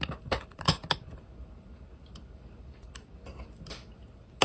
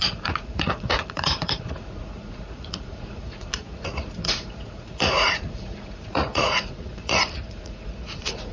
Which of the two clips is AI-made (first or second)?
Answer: second